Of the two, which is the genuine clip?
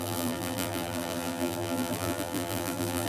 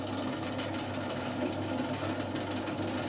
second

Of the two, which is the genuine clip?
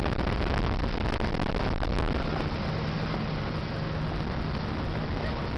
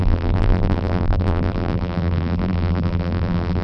first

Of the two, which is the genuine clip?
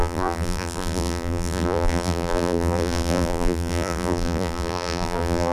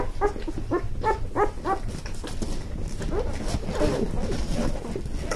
second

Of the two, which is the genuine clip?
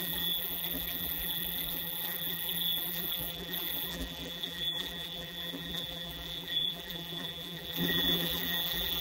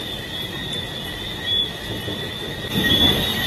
second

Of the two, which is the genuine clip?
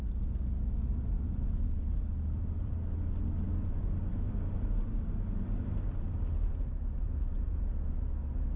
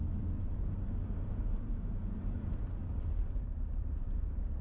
first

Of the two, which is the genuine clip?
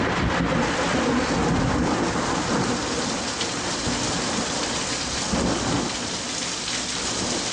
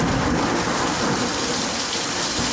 second